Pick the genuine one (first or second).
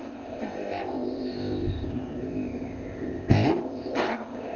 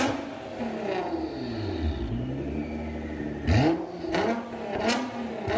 second